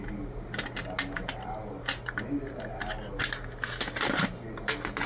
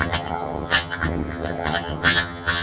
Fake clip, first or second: second